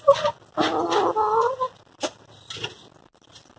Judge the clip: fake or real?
real